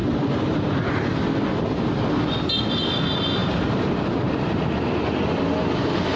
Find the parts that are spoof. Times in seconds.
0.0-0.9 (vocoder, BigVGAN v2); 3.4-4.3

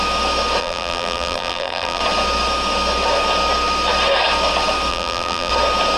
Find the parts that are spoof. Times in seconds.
0.6-2.0 (vocoder, BigVGAN v2); 4.9-5.5

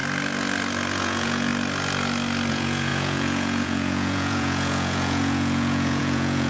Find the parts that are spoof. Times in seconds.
1.0-1.5 (vocoder, Vocos); 2.5-6.5

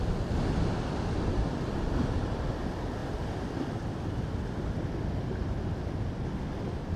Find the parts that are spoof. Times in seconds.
none

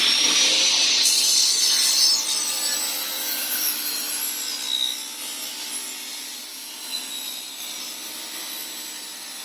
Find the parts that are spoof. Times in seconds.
2.8-4.2 (autoencoder, DAC-VAE); 6.5-7.1

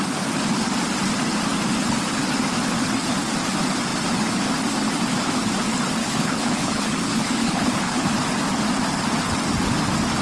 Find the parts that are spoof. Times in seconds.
6.0-8.1 (codec, HILCodec)